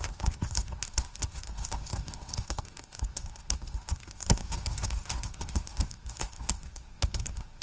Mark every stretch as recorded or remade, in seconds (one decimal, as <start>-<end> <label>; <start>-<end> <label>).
0.0-7.6 remade